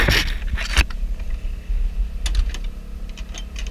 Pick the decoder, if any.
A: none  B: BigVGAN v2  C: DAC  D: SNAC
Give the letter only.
A